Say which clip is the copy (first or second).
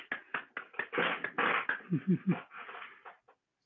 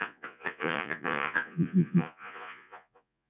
second